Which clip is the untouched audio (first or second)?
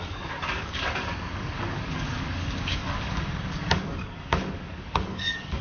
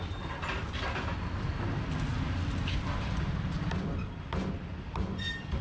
second